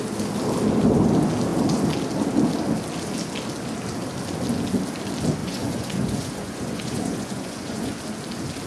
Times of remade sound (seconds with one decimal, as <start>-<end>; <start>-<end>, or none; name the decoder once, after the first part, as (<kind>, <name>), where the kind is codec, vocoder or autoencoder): 5.4-7.9 (vocoder, Vocos)